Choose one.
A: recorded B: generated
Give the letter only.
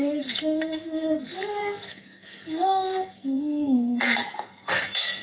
B